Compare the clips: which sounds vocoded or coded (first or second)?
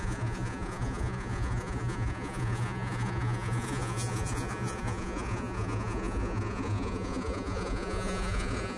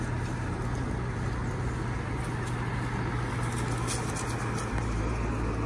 first